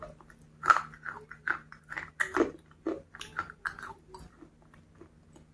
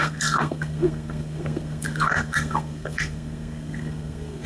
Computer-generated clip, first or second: second